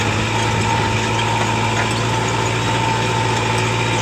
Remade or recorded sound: recorded